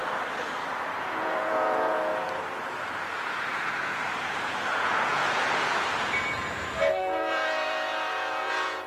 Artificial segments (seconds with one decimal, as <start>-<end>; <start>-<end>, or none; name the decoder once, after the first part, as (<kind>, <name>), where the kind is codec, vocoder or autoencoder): 1.0-2.1 (vocoder, Vocos); 3.1-3.9; 4.7-8.9